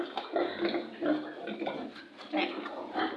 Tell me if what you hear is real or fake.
real